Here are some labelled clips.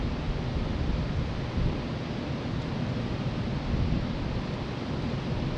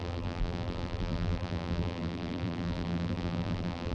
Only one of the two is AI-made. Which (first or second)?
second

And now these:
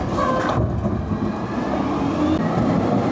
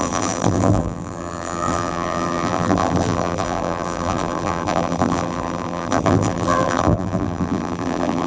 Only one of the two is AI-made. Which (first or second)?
second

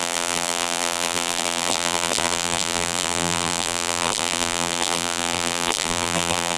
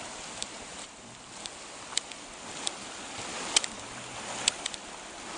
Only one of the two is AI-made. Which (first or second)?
first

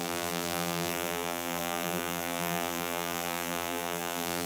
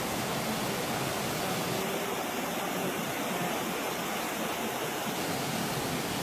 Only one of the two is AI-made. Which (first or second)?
first